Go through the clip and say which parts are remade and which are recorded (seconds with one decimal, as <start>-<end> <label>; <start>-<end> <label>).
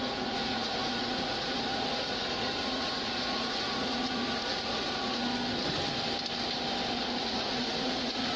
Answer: 0.0-5.2 remade; 5.2-7.2 recorded; 7.2-8.4 remade